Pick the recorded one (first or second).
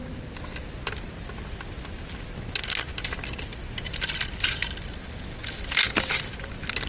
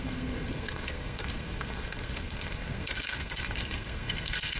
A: first